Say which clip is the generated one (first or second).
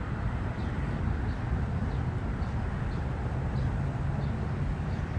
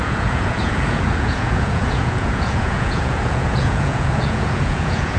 second